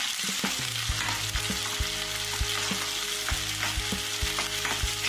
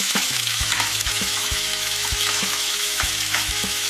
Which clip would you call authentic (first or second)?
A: first